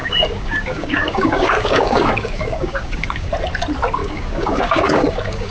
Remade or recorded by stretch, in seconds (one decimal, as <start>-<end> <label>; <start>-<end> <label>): 0.0-3.3 remade; 3.3-4.0 recorded; 4.0-5.5 remade